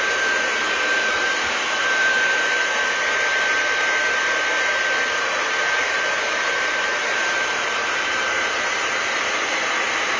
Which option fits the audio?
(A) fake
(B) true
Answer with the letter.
A